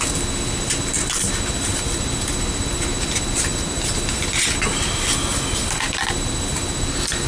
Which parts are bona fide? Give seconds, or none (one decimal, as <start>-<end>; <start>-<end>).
0.0-7.3